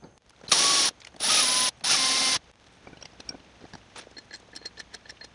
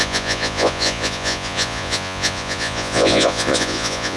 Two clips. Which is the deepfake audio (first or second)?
second